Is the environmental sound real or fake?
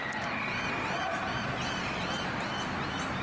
real